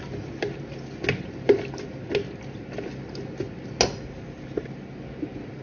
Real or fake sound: real